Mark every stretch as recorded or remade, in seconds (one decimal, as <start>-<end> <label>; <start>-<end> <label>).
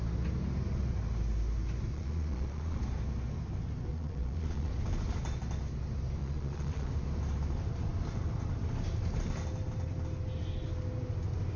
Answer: 0.0-1.9 recorded; 1.9-2.8 remade; 2.8-3.9 recorded; 3.9-4.7 remade; 4.7-6.2 recorded; 6.2-6.9 remade; 6.9-11.6 recorded